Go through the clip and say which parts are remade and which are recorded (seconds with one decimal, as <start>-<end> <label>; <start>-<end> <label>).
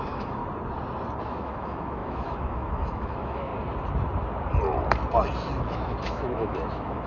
0.0-0.4 remade; 0.4-1.2 recorded; 1.2-3.5 remade; 3.5-5.6 recorded; 5.6-7.1 remade